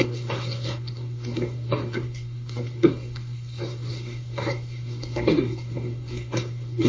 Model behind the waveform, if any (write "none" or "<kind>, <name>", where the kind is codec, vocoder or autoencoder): codec, SNAC